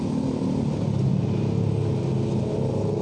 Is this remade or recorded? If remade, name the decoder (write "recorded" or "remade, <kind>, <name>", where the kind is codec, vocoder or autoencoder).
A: recorded